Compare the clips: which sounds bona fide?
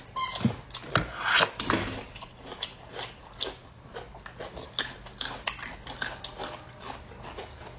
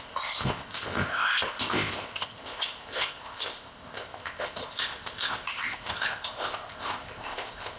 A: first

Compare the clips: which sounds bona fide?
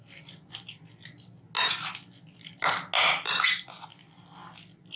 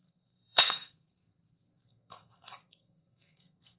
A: first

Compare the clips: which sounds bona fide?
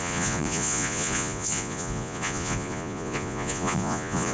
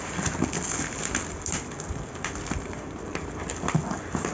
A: second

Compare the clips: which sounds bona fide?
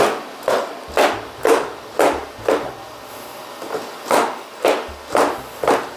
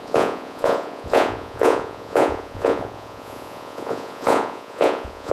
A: first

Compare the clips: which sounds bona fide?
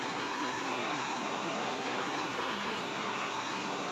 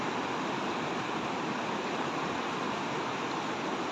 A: second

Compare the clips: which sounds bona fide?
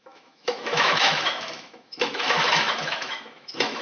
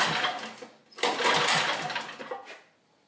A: second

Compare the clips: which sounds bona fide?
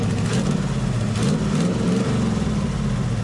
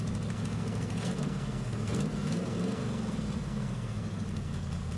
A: first